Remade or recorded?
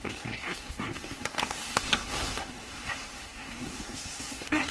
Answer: remade